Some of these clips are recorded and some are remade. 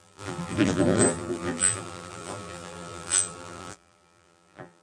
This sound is remade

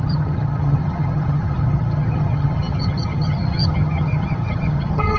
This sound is remade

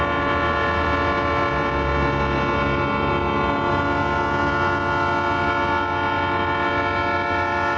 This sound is recorded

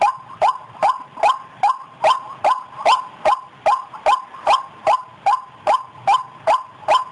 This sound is recorded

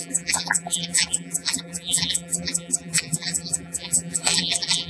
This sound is remade